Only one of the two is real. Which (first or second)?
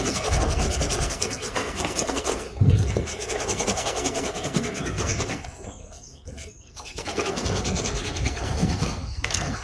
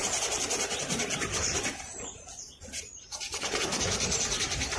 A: second